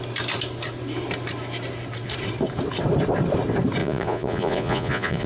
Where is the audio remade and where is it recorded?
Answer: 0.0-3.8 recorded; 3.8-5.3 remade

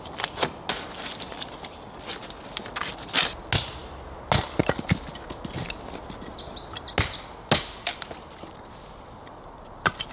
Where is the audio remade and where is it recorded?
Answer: 0.0-10.1 recorded

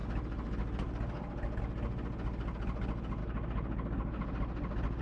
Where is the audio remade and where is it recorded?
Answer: 0.0-5.0 recorded

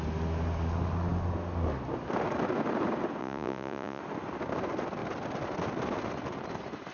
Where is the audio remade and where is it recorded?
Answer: 0.0-3.2 recorded; 3.2-4.0 remade; 4.0-6.9 recorded

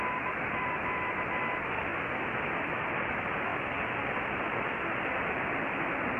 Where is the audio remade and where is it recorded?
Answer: 0.0-1.9 remade; 1.9-2.9 recorded; 2.9-3.5 remade; 3.5-4.1 recorded; 4.1-6.2 remade